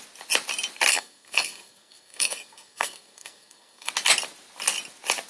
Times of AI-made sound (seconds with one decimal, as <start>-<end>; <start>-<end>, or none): 0.9-3.9